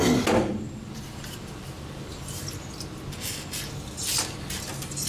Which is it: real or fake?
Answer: real